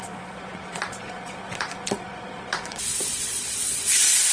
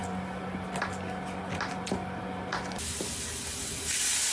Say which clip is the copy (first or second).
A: first